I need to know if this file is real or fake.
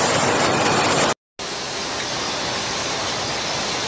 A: real